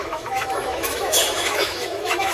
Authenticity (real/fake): fake